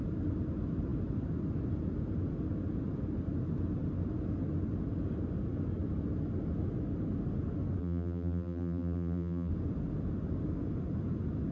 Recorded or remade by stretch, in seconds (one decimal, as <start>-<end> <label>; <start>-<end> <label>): 0.0-7.8 recorded; 7.8-9.5 remade; 9.5-11.5 recorded